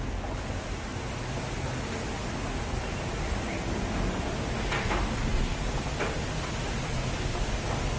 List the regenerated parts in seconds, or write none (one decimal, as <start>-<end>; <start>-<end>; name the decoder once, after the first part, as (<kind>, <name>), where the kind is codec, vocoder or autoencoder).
none